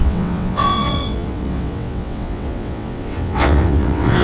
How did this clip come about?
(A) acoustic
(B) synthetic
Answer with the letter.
B